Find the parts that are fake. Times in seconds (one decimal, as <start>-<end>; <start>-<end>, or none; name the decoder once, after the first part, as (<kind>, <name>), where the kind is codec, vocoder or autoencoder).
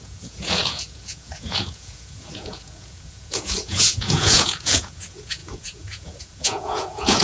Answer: 0.0-7.2 (vocoder, Vocos)